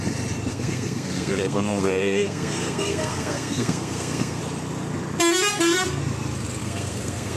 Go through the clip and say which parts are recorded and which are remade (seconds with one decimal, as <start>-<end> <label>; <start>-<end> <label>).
0.0-0.5 recorded; 0.5-4.4 remade; 4.4-5.5 recorded; 5.5-6.0 remade; 6.0-6.6 recorded; 6.6-7.4 remade